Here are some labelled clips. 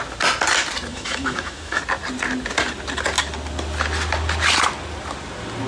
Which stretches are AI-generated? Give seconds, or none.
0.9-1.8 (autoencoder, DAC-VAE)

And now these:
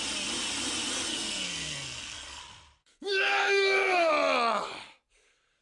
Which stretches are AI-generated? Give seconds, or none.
1.1-2.4 (codec, SNAC); 2.8-4.1

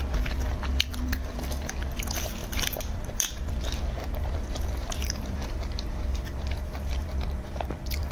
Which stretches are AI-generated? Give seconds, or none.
2.4-3.3 (vocoder, BigVGAN v2); 4.0-7.6

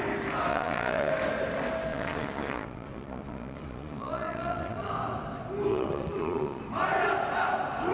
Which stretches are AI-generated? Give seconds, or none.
0.5-1.1 (vocoder, Vocos); 1.9-4.9; 5.7-6.6

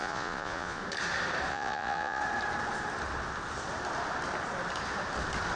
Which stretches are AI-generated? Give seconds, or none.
0.0-0.8 (vocoder, Vocos); 1.5-2.2

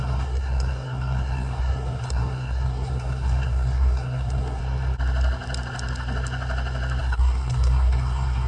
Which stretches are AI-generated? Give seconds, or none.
0.0-4.6 (codec, SNAC); 7.0-8.5

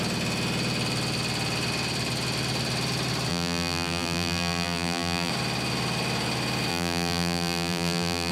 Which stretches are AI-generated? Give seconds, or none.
3.3-5.3 (vocoder, BigVGAN v2); 6.7-8.3